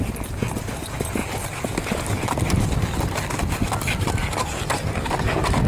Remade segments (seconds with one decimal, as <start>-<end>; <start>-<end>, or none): none